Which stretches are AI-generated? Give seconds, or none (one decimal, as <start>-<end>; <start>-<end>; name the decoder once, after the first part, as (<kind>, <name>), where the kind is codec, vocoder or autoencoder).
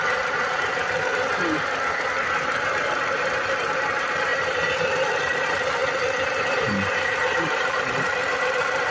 0.0-1.1 (vocoder, BigVGAN v2); 2.3-5.8; 6.7-8.9